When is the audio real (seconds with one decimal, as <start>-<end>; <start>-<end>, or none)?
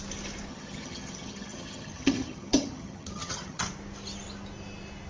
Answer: 0.0-0.5; 3.6-5.1